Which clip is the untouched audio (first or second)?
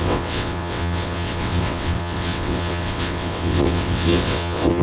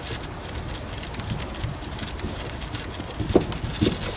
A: second